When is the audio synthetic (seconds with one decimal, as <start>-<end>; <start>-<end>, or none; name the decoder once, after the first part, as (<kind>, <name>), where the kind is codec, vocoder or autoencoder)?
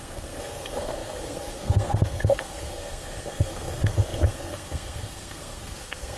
0.0-6.2 (codec, SNAC)